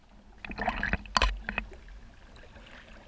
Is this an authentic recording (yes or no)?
yes